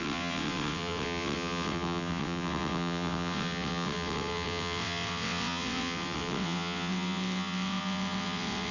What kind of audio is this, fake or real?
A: fake